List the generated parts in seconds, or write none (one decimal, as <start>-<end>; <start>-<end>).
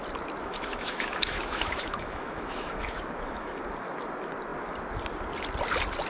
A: 0.4-3.6